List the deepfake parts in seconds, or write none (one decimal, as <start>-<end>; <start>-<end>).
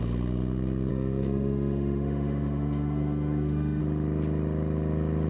0.9-3.8